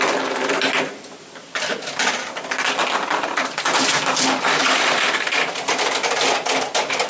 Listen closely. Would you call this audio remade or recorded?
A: recorded